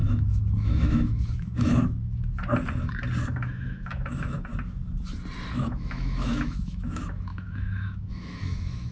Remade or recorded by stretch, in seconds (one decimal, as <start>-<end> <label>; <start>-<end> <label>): 0.0-2.3 remade; 2.3-3.5 recorded; 3.5-4.5 remade; 4.5-5.5 recorded; 5.5-8.9 remade